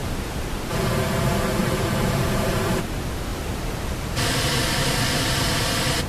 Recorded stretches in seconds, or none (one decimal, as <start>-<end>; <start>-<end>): 0.8-1.6; 2.8-3.3; 5.6-6.1